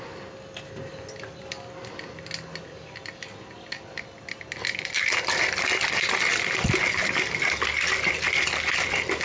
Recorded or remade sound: recorded